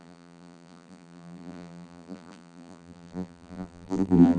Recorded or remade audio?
remade